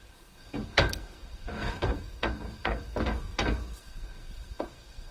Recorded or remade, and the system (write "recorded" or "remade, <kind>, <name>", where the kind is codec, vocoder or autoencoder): remade, codec, SNAC